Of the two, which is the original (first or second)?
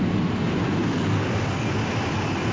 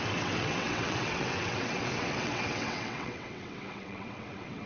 first